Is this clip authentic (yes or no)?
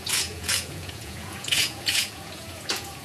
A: no